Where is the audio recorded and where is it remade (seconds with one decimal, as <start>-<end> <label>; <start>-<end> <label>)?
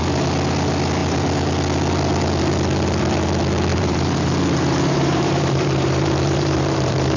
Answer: 0.0-3.7 recorded; 3.7-7.2 remade